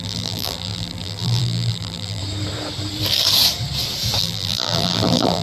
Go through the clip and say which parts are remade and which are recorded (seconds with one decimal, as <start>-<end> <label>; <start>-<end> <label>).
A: 0.0-2.2 remade; 2.2-4.2 recorded; 4.2-5.4 remade